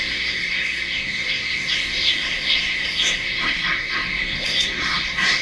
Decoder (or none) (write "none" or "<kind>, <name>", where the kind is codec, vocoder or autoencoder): codec, SNAC